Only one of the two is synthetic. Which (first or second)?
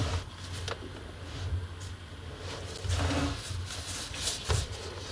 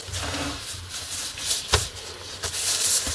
second